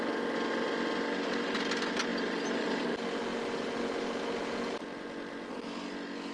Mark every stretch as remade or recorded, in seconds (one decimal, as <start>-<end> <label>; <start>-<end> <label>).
0.0-6.3 recorded